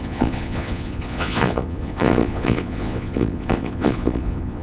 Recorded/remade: remade